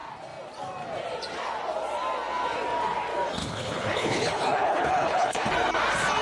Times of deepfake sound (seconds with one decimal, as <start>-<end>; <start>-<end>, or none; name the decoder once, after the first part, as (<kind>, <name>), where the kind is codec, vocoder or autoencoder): 3.4-5.5 (codec, HILCodec)